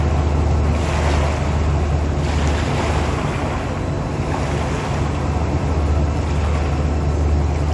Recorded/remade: recorded